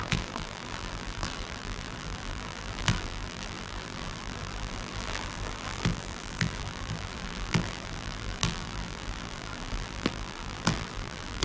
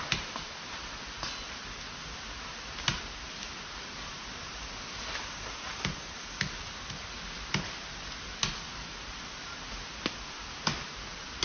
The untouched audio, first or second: second